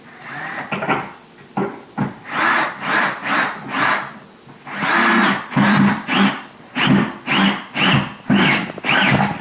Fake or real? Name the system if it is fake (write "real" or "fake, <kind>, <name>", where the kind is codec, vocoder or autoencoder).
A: real